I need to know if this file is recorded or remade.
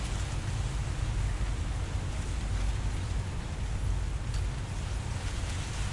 recorded